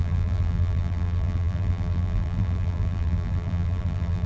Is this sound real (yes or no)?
no